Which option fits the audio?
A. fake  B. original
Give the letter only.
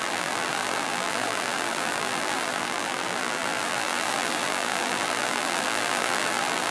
A